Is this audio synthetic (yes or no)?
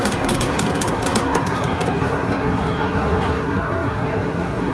yes